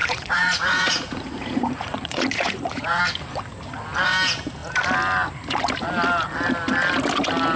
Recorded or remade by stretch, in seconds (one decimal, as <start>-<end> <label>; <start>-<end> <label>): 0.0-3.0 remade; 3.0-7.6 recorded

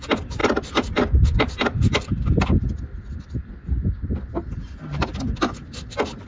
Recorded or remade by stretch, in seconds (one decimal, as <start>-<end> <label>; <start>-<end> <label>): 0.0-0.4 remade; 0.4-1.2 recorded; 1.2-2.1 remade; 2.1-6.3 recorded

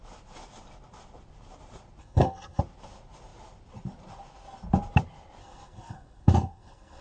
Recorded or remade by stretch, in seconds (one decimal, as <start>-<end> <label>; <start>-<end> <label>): 0.0-2.0 recorded; 2.0-2.6 remade; 2.6-5.4 recorded; 5.4-7.0 remade